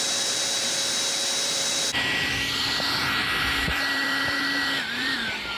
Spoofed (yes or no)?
yes